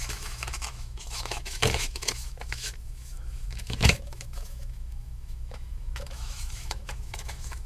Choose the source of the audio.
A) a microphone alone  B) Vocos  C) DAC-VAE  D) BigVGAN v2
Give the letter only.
C